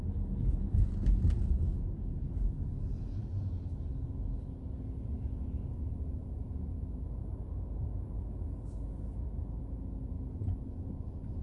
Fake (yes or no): no